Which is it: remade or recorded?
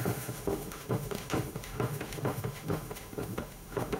remade